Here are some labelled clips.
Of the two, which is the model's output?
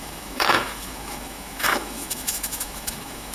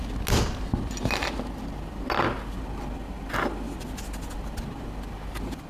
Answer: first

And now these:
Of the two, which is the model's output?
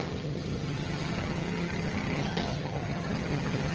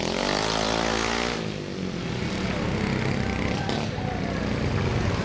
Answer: first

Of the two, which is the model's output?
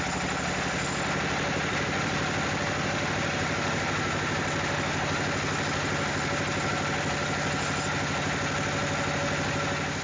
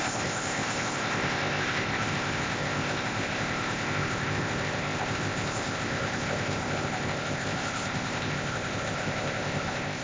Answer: second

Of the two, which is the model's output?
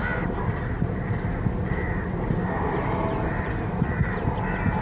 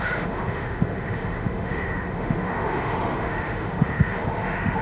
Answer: second